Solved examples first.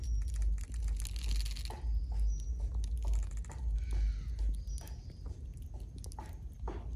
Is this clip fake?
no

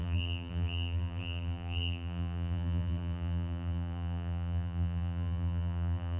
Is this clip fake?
yes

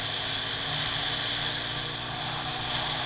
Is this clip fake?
no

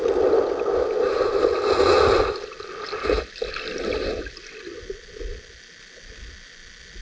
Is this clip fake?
no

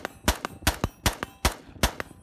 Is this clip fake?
no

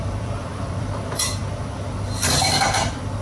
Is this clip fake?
yes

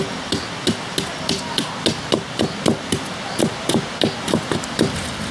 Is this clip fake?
no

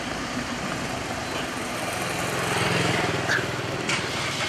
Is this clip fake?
yes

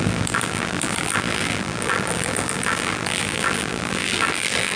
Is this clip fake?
yes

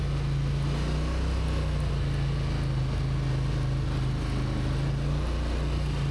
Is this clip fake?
no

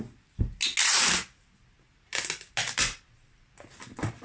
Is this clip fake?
no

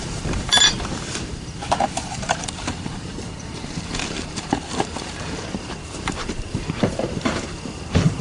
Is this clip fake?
yes